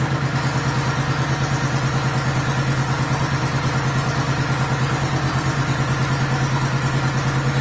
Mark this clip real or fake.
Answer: real